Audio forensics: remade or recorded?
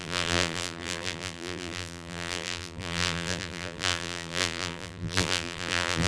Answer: remade